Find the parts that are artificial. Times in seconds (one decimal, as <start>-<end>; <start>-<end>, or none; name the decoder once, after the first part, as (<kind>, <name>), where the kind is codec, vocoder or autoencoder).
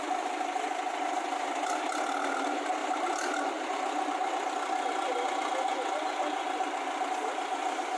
none